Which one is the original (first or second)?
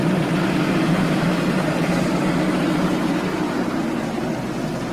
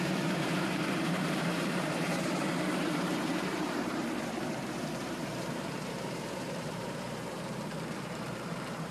first